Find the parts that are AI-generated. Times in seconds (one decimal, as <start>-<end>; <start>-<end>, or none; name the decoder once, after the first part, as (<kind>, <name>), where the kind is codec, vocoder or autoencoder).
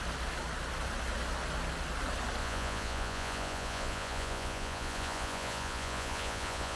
2.4-6.8 (vocoder, Vocos)